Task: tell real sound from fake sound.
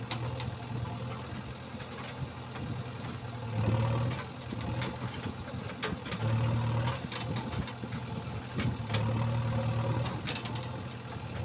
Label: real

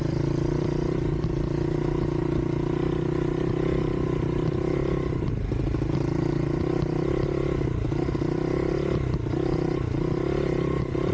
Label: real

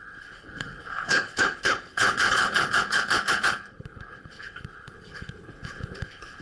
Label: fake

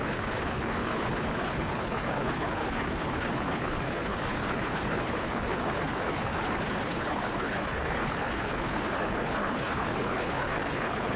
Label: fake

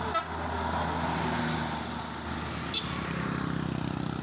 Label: real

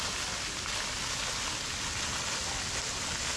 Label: real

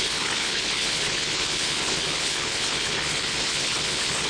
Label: fake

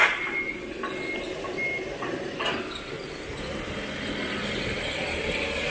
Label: real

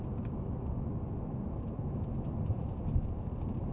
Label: real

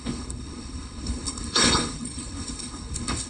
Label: fake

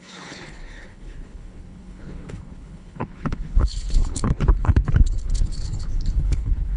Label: fake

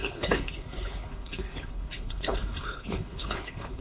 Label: fake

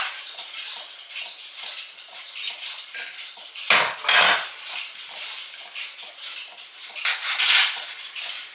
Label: real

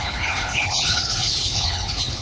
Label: fake